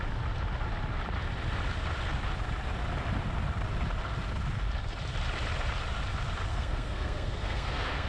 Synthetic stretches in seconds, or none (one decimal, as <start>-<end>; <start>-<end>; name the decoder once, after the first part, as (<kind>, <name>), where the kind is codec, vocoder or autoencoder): 6.5-8.1 (codec, SNAC)